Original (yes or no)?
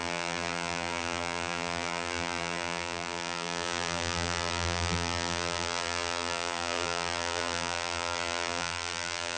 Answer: no